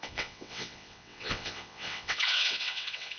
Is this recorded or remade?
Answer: remade